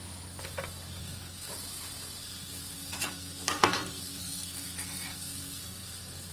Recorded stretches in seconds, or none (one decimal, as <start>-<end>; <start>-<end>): 0.0-1.0; 1.5-2.2